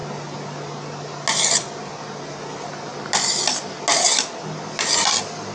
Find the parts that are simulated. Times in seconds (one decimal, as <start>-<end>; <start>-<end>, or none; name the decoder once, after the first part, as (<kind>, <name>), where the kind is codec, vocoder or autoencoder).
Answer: none